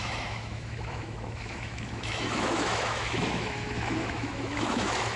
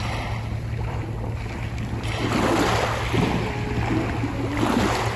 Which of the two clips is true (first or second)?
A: second